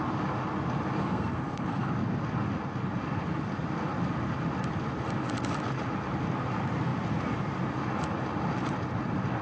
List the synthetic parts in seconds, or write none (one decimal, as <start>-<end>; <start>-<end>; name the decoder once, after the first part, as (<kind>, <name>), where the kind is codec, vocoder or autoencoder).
1.0-1.9 (codec, SNAC)